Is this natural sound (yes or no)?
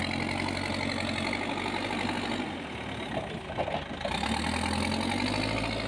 yes